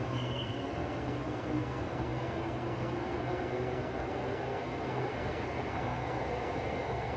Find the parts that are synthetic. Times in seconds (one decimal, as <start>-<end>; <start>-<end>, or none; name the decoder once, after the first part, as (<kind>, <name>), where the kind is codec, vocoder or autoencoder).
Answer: 0.0-7.2 (codec, SNAC)

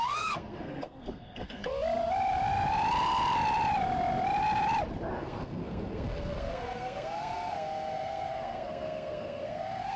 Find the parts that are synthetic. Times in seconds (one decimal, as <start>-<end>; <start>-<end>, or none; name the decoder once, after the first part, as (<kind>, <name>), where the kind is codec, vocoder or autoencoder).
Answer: 0.0-1.7 (codec, SNAC); 5.2-10.0

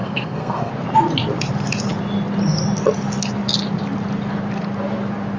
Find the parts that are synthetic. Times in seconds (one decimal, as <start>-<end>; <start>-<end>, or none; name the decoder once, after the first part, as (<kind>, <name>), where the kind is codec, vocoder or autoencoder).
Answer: 0.0-0.7 (codec, SNAC)

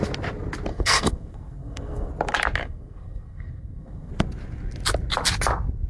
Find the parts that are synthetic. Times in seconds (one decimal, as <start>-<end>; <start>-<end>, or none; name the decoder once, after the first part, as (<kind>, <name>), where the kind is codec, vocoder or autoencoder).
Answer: 0.7-2.1 (codec, SNAC); 2.6-4.1

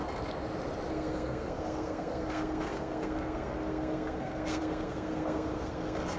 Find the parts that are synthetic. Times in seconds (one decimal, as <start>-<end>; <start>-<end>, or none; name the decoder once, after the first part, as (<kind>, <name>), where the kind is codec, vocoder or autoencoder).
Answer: 0.9-6.2 (codec, SNAC)

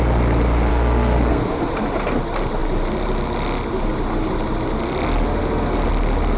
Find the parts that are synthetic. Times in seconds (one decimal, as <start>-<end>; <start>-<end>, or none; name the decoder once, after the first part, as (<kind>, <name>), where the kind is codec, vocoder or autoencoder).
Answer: 0.7-1.6 (codec, SNAC)

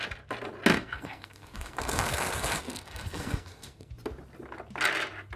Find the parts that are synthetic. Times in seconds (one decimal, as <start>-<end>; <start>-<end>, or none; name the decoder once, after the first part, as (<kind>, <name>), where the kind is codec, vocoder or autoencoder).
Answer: 0.7-3.9 (codec, SNAC)